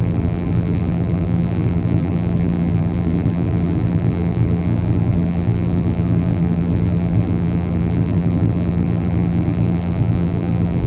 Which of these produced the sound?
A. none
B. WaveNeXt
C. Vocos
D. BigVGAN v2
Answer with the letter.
D